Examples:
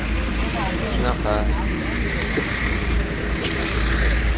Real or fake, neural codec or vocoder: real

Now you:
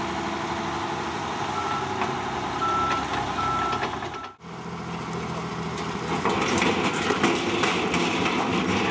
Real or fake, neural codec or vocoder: real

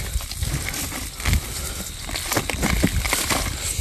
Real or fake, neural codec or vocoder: real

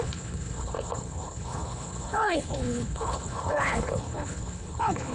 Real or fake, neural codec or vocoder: fake, codec, HILCodec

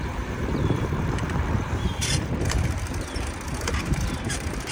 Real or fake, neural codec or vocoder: fake, vocoder, BigVGAN v2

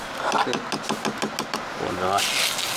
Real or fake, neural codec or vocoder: real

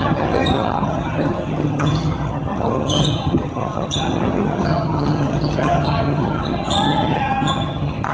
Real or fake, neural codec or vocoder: fake, vocoder, HiFi-GAN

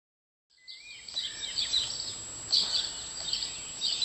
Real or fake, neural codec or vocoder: real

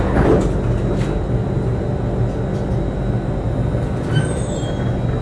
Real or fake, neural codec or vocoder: real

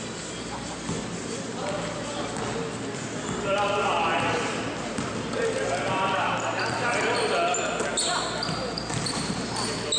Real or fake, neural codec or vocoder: real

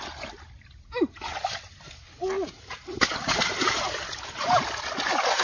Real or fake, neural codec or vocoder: real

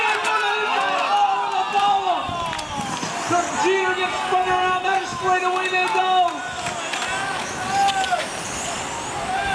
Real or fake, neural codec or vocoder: real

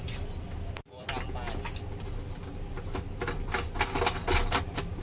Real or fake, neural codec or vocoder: real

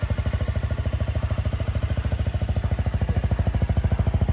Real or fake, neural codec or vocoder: real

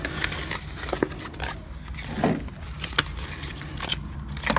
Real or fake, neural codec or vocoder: real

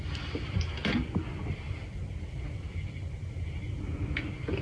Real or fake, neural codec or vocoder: real